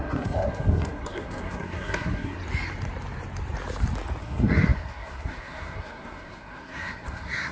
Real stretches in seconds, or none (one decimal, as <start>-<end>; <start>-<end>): 2.4-4.2